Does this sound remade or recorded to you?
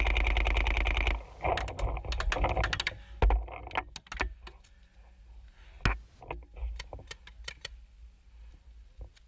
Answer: recorded